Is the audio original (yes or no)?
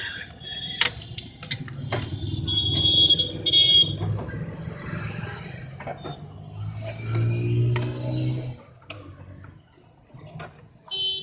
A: yes